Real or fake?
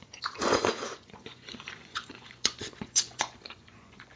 fake